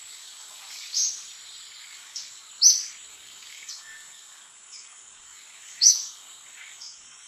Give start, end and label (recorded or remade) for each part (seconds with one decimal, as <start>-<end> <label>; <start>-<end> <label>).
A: 0.0-1.0 remade; 1.0-1.8 recorded; 1.8-2.5 remade; 2.5-3.1 recorded; 3.1-7.3 remade